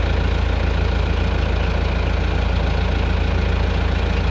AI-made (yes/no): no